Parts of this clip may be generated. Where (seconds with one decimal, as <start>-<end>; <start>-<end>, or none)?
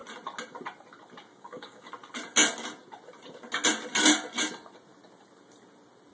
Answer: 1.3-1.9